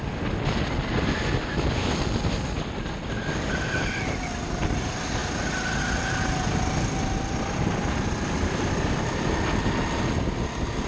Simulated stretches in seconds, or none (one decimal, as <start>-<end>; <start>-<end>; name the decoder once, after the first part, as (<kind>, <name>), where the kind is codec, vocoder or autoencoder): none